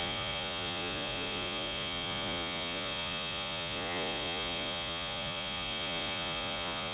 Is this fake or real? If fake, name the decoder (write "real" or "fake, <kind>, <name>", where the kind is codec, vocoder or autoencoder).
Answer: fake, vocoder, Vocos